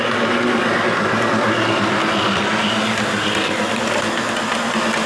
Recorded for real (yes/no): yes